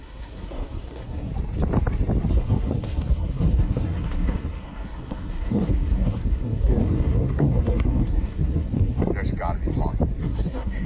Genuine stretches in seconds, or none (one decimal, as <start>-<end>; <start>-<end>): 1.3-2.3; 9.1-10.2

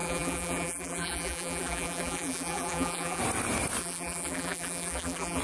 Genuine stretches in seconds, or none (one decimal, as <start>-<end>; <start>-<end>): 3.2-3.8

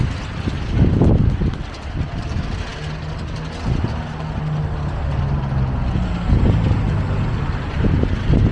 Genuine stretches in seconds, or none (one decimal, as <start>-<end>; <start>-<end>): 0.0-8.5